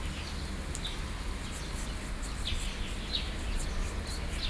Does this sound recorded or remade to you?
recorded